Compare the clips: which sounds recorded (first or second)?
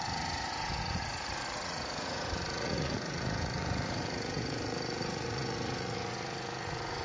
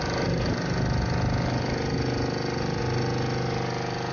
second